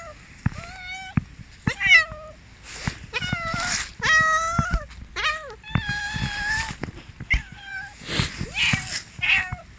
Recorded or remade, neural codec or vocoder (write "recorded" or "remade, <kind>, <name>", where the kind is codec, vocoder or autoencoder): recorded